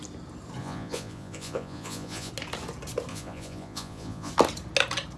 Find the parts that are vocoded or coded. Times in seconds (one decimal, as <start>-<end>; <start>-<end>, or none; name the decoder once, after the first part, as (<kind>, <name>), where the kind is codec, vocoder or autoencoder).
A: 0.6-2.3 (vocoder, Vocos); 3.1-4.3